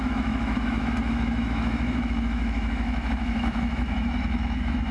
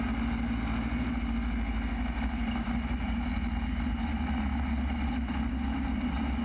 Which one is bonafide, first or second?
second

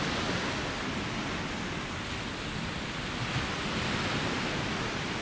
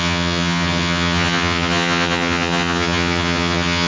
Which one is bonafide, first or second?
first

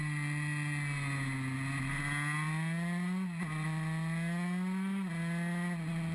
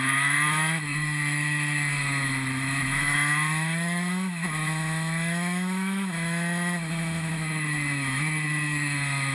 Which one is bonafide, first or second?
first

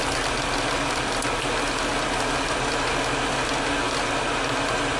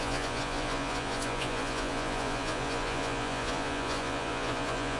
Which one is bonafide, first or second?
first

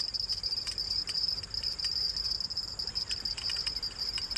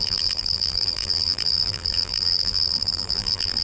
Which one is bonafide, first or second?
first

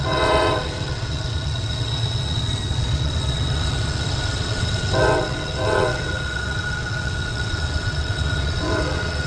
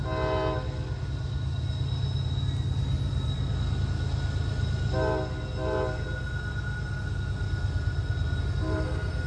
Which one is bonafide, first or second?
second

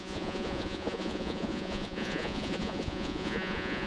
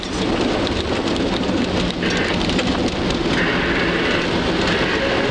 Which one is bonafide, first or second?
second